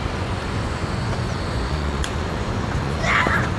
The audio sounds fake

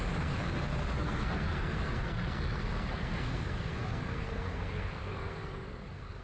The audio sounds fake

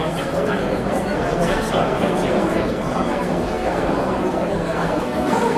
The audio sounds fake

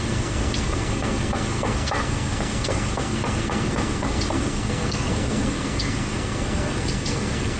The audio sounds fake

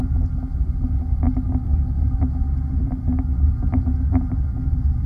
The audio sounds real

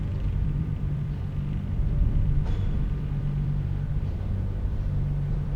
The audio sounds fake